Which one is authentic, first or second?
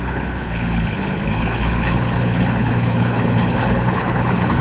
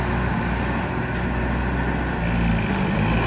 second